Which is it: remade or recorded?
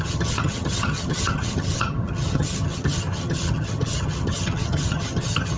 remade